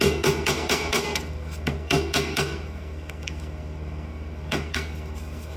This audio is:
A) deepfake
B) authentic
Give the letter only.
A